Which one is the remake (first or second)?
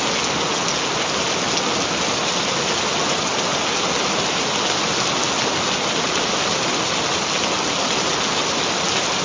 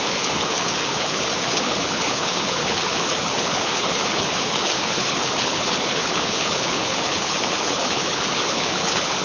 second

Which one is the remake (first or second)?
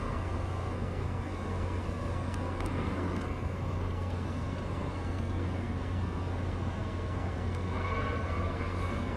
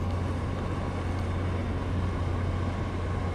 first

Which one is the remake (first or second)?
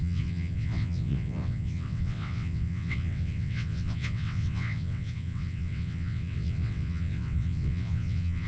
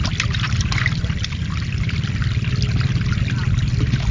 first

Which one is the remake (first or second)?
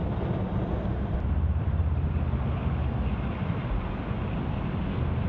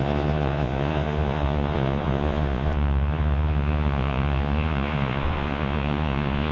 second